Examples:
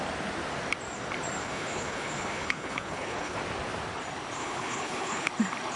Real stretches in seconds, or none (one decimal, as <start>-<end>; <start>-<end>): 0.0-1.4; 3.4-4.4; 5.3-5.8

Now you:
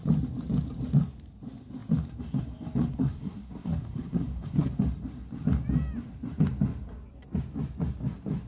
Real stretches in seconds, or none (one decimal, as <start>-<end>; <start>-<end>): 0.0-2.9; 4.8-8.5

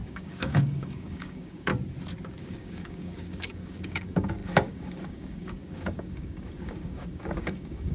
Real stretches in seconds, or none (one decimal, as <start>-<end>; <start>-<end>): 1.7-2.4

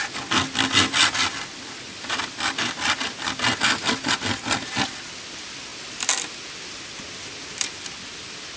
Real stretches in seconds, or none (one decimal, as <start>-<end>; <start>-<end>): 0.0-8.6